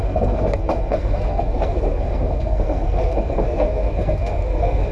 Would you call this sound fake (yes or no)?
yes